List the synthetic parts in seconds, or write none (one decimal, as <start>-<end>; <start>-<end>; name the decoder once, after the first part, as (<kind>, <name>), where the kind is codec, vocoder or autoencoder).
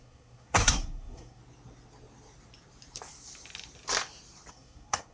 0.0-1.4 (codec, SNAC); 4.5-5.1